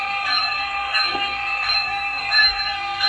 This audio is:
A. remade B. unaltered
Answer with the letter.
A